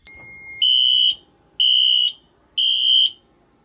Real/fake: real